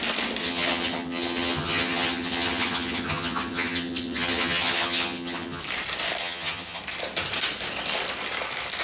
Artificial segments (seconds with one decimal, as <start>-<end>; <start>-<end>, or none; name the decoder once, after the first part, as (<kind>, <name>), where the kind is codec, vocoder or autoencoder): 0.4-5.6 (vocoder, HiFi-GAN); 6.2-6.8

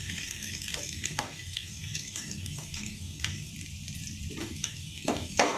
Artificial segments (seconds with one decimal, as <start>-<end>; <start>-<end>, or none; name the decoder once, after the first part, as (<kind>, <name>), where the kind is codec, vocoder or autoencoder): 0.0-3.5 (codec, DAC); 4.4-5.6

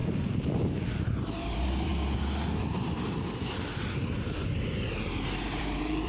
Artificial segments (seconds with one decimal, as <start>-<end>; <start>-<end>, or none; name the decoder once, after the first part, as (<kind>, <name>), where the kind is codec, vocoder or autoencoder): 0.0-1.9 (vocoder, BigVGAN v2); 5.6-6.1